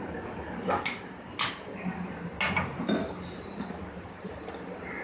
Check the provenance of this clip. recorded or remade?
recorded